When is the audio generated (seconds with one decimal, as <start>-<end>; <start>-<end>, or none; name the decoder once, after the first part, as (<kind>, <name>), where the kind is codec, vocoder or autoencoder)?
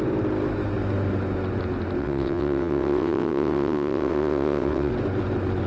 2.0-4.9 (vocoder, WaveNeXt)